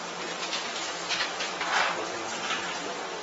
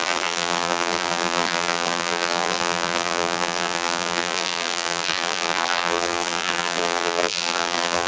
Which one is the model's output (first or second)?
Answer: second